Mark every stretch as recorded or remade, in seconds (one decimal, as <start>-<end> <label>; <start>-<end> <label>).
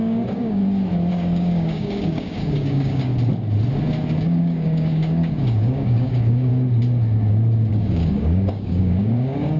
0.0-0.6 remade; 0.6-1.1 recorded; 1.1-3.1 remade; 3.1-4.2 recorded; 4.2-6.5 remade; 6.5-7.7 recorded; 7.7-9.6 remade